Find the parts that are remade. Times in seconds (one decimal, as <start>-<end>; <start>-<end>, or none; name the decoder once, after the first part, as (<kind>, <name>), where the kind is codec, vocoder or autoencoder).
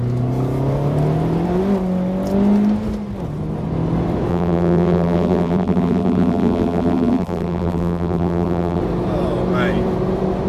4.3-8.8 (vocoder, BigVGAN v2)